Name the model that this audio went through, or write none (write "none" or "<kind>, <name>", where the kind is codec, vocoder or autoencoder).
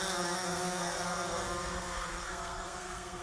codec, SNAC